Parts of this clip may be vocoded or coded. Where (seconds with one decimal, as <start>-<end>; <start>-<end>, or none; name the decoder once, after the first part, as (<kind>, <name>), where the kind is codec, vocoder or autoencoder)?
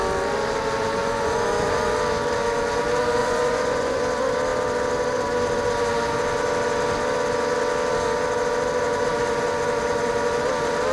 1.0-1.9 (vocoder, Vocos); 3.2-4.0